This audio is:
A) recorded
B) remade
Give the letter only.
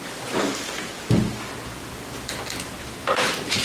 A